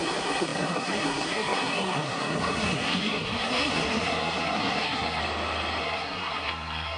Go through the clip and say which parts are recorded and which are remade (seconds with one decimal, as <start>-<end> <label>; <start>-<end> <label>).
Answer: 0.0-5.2 remade; 5.2-5.8 recorded; 5.8-7.0 remade